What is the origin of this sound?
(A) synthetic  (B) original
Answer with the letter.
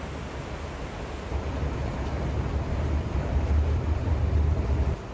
A